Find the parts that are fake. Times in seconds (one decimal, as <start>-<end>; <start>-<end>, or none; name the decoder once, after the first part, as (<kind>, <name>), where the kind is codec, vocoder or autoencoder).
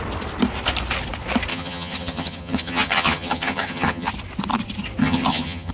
1.5-4.1 (vocoder, HiFi-GAN); 5.0-5.7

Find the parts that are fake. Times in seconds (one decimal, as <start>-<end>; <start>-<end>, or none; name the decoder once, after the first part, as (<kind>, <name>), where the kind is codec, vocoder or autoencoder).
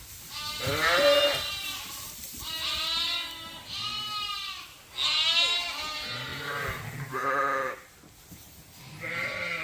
none